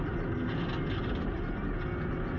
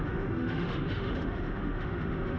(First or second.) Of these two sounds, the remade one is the second